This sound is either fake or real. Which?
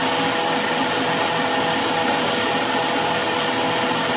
real